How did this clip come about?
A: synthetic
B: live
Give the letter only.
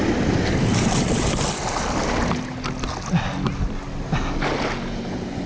B